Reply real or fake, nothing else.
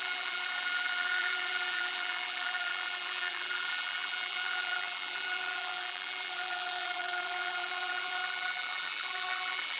fake